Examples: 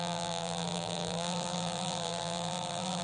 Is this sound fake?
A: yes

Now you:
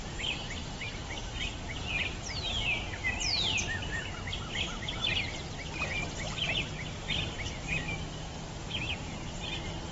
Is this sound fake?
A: no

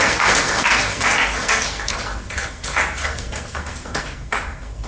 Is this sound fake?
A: yes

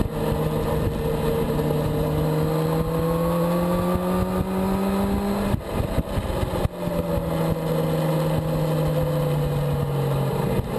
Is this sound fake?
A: no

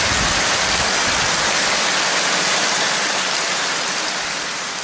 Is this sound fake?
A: no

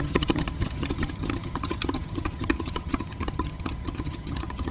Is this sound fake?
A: yes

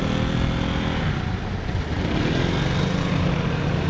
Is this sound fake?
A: no